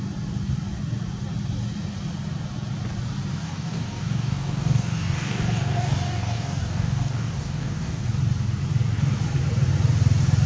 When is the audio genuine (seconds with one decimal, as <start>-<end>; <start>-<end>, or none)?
0.0-3.3; 8.0-10.5